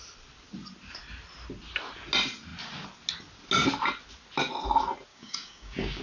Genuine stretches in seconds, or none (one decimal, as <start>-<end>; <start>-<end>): 0.0-5.1